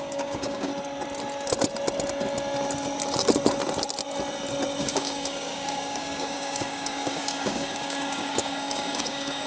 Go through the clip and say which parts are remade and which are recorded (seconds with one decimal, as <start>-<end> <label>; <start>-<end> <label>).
0.0-0.7 remade; 0.7-4.8 recorded; 4.8-9.5 remade